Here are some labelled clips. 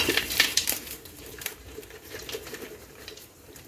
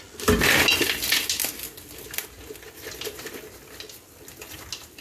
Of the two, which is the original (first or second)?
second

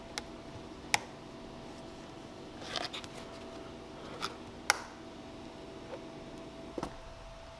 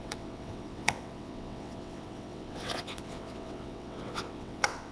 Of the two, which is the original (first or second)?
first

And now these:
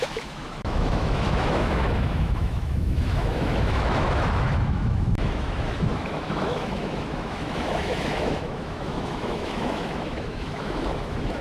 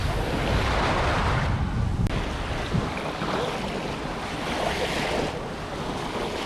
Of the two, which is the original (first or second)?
second